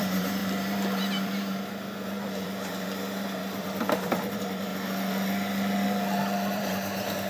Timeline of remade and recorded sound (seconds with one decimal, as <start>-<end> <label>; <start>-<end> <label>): 0.0-4.7 remade; 4.7-6.5 recorded; 6.5-7.3 remade